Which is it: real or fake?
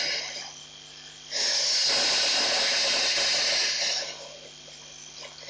real